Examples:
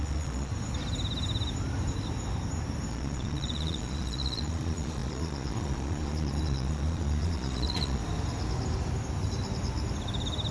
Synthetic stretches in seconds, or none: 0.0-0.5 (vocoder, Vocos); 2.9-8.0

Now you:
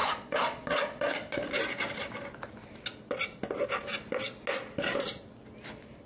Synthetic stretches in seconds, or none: 0.0-1.6 (vocoder, Vocos)

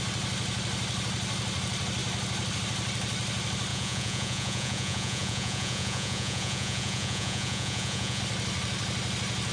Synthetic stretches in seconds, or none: 3.7-8.2 (vocoder, Vocos)